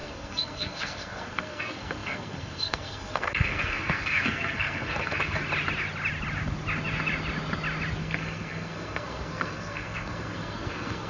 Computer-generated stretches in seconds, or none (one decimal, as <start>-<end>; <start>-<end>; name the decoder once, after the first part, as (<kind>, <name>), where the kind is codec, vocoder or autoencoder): 0.0-5.4 (codec, SNAC); 8.0-11.1